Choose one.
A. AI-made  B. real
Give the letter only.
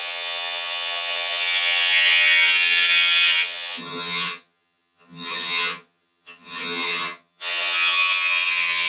A